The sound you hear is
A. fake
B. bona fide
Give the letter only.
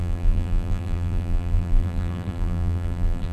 A